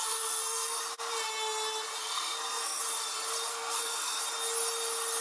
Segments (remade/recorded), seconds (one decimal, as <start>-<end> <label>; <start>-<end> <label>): 0.0-0.8 remade; 0.8-2.0 recorded; 2.0-2.8 remade; 2.8-3.5 recorded; 3.5-4.2 remade; 4.2-5.2 recorded